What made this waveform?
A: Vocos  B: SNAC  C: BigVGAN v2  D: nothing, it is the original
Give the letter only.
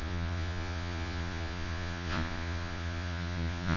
A